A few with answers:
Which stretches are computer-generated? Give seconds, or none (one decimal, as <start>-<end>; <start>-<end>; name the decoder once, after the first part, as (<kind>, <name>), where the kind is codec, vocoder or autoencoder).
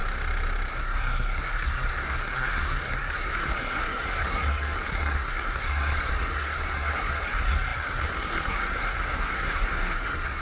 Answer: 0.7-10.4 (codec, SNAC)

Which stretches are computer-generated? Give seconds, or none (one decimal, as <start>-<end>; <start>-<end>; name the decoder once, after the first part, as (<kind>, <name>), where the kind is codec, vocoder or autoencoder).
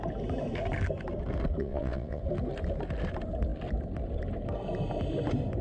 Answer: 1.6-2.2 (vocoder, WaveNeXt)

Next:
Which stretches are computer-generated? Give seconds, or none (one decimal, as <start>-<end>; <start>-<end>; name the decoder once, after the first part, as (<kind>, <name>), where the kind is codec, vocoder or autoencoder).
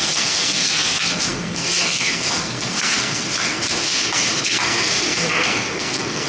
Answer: 0.0-6.3 (codec, SNAC)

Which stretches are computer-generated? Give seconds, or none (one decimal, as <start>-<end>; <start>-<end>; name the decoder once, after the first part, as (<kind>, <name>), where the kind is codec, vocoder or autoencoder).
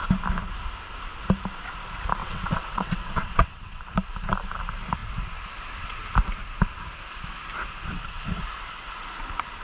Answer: 2.2-3.8 (vocoder, WaveNeXt)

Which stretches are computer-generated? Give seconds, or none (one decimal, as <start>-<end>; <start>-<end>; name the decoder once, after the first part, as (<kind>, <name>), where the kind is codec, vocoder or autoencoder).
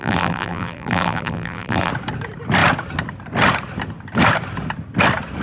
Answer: 0.0-1.9 (vocoder, BigVGAN v2)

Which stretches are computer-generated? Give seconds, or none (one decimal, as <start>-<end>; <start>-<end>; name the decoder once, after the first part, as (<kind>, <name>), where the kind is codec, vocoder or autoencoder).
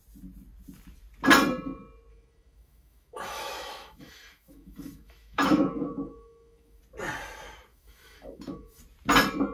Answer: 2.1-6.8 (autoencoder, DAC-VAE); 7.7-8.8